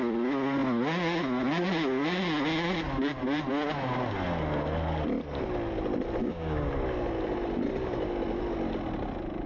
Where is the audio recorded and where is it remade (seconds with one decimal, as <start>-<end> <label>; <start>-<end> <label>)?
0.0-6.2 recorded; 6.2-6.7 remade; 6.7-9.5 recorded